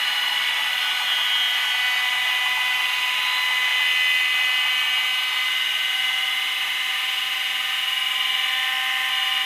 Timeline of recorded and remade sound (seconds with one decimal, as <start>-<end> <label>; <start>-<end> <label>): 0.0-9.5 recorded